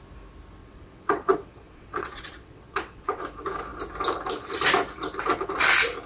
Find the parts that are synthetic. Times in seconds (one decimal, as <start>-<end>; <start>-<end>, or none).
0.6-3.2